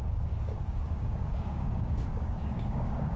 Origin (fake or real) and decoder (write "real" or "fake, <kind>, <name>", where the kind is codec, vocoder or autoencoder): fake, codec, DAC